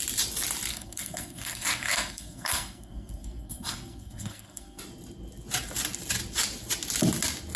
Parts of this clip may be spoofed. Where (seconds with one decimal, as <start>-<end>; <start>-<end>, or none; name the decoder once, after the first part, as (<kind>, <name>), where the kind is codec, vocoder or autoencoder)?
0.7-4.8 (codec, SNAC)